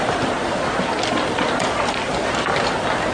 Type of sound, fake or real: real